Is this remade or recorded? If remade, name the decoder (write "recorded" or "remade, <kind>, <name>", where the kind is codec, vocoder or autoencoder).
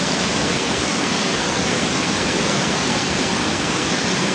remade, codec, SNAC